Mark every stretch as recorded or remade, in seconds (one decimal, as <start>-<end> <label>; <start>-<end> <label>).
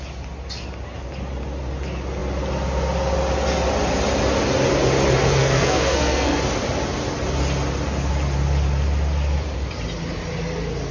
0.0-5.4 recorded; 5.4-6.4 remade; 6.4-10.9 recorded